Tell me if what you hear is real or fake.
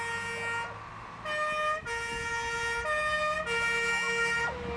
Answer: real